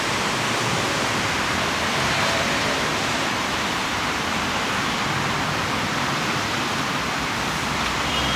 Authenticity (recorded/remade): remade